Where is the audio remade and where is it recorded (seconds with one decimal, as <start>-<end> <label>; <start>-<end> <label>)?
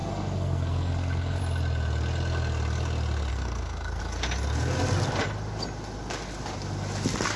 0.0-1.4 remade; 1.4-3.3 recorded; 3.3-4.0 remade; 4.0-7.4 recorded